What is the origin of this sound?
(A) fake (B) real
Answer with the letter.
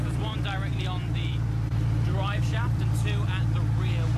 A